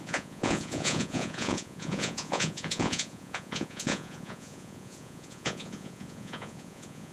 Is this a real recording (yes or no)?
no